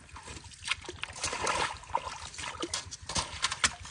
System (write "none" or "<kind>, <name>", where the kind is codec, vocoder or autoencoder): none